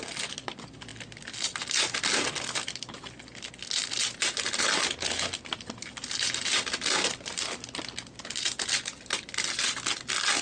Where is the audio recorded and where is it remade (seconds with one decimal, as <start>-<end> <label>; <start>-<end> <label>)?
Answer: 0.0-10.4 recorded